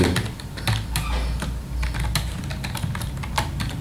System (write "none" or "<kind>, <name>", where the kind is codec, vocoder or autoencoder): none